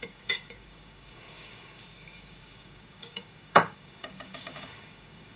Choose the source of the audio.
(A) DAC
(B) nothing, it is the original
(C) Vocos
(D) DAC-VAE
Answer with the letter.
A